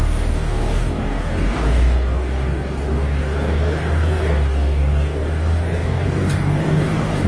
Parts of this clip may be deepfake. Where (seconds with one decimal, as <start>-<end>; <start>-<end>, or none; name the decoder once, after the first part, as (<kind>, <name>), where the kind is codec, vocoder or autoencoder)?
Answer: 0.0-7.3 (codec, DAC)